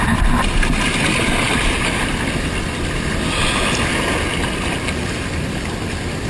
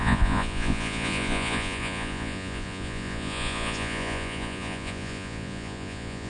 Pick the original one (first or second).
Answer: first